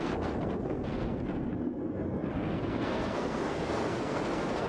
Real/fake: fake